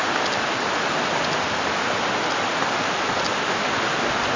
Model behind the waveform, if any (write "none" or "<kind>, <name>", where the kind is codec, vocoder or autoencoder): none